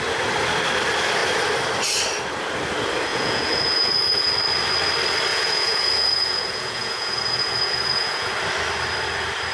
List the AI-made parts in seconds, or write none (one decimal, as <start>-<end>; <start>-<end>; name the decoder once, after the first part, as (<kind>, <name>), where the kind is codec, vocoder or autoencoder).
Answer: 3.1-4.3 (vocoder, Vocos); 5.3-8.3